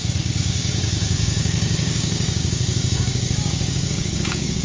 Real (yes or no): no